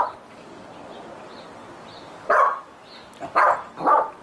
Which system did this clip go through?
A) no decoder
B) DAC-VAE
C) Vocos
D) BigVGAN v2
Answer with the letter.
A